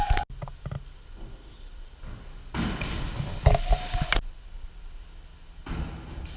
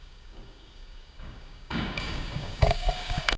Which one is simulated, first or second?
second